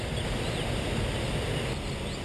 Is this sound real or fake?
real